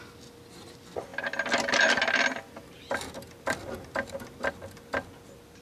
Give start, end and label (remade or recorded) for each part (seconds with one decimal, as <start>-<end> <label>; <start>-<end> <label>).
0.0-5.6 recorded